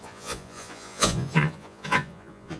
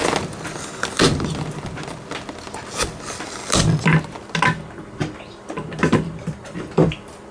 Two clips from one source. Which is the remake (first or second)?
first